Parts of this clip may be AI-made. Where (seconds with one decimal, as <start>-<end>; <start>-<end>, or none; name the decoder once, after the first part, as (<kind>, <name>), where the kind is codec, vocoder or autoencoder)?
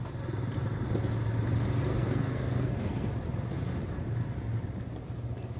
1.9-3.1 (codec, SNAC)